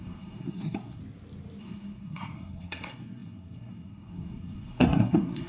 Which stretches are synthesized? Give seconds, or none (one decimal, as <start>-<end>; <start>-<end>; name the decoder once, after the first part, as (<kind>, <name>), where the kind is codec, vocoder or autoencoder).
0.0-1.0 (codec, SNAC); 1.6-5.5